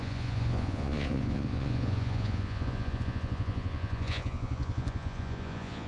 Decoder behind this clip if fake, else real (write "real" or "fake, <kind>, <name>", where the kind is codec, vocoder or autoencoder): fake, vocoder, Vocos